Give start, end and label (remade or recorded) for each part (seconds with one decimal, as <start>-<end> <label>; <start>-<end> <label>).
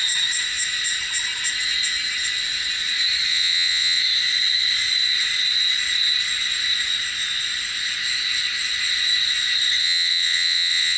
0.0-3.3 recorded; 3.3-4.0 remade; 4.0-9.8 recorded; 9.8-11.0 remade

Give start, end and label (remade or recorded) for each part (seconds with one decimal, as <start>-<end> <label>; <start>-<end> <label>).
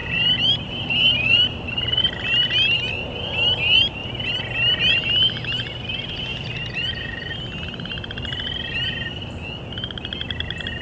0.0-2.0 remade; 2.0-6.3 recorded; 6.3-7.4 remade; 7.4-10.8 recorded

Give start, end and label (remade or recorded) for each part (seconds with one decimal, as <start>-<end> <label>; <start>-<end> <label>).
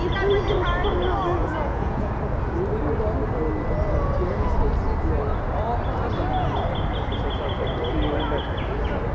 0.0-1.4 recorded; 1.4-2.1 remade; 2.1-9.1 recorded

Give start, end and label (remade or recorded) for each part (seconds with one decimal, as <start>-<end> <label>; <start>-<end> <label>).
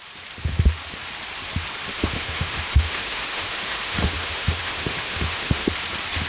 0.0-1.9 recorded; 1.9-5.7 remade; 5.7-6.3 recorded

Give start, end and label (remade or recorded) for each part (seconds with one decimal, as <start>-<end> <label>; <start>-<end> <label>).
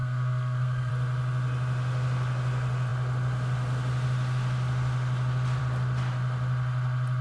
0.0-0.9 remade; 0.9-7.2 recorded